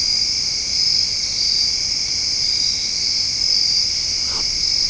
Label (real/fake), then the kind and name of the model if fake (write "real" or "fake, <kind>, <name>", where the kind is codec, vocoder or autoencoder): real